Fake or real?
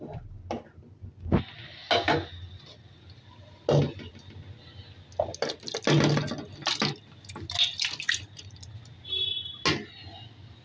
real